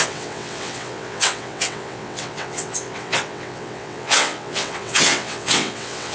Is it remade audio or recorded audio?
remade